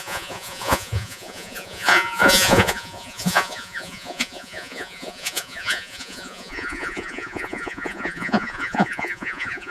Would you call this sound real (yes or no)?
no